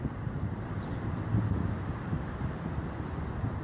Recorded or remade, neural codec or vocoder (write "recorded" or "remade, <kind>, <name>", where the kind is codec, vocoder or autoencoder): remade, vocoder, BigVGAN v2